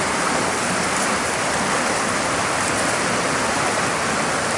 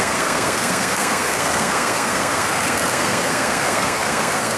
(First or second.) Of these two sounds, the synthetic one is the second